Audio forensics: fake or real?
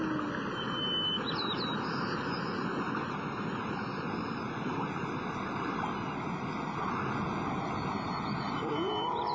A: real